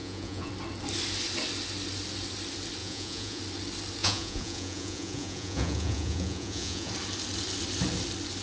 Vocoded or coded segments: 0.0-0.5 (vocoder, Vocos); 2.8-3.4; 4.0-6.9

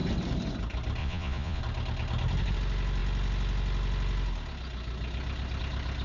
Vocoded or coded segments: 1.0-1.6 (vocoder, Vocos)

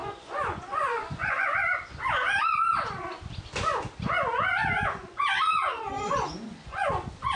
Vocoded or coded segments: 0.0-1.6 (vocoder, Vocos); 4.6-6.9

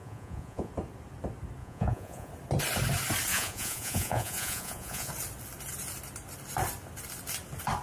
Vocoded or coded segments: 0.0-0.7 (vocoder, Vocos); 1.6-2.3; 3.3-5.1